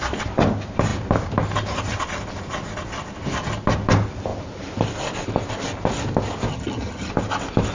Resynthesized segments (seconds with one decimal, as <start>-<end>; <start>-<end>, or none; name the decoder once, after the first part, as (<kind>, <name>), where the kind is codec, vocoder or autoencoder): 6.5-7.1 (vocoder, HiFi-GAN)